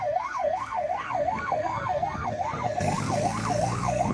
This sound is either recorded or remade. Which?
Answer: remade